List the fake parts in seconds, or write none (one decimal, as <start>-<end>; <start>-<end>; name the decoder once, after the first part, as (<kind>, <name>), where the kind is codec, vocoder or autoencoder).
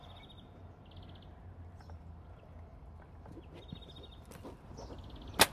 none